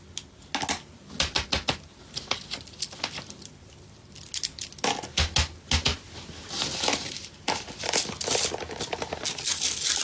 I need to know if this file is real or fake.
real